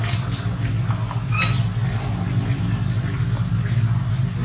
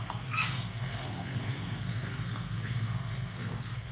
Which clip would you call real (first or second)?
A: first